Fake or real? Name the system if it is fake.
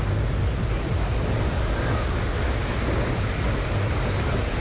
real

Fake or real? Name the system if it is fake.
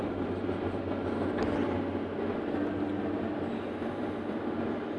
real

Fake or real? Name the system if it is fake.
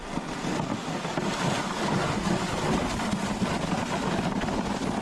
real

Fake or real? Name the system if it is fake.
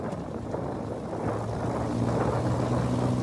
real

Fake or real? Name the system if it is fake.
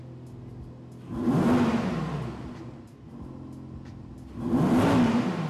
real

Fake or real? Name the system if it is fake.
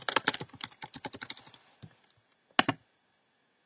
real